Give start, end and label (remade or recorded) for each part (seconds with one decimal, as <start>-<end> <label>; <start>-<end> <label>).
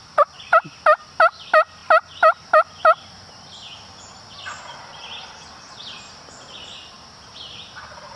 0.0-8.2 recorded